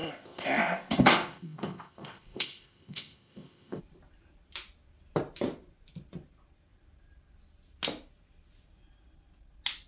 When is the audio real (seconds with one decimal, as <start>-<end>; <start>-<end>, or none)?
3.8-9.9